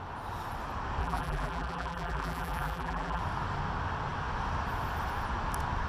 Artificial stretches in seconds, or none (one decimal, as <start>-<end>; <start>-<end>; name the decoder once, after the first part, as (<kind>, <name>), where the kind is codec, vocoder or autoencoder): 1.0-3.2 (vocoder, BigVGAN v2)